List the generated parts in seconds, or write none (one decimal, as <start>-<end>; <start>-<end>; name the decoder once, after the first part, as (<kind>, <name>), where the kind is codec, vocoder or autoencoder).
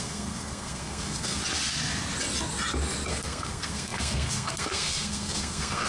0.0-1.4 (codec, SNAC); 3.1-5.9